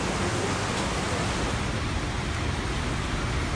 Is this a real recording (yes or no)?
yes